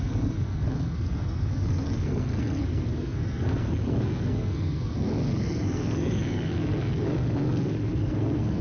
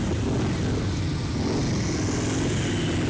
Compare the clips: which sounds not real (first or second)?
first